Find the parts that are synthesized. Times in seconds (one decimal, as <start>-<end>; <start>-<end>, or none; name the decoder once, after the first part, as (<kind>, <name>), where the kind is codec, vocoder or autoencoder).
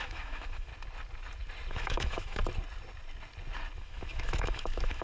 0.0-0.7 (autoencoder, DAC-VAE); 1.7-2.4; 3.8-5.0